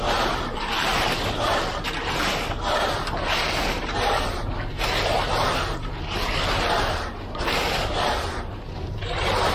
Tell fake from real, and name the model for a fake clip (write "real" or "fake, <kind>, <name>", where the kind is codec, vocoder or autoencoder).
fake, vocoder, BigVGAN v2